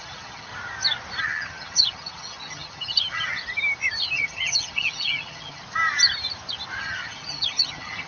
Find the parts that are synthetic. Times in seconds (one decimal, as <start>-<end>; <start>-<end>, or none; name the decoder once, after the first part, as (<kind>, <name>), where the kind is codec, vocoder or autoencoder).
0.0-0.5 (vocoder, HiFi-GAN); 1.2-3.4; 4.1-5.6; 6.8-8.1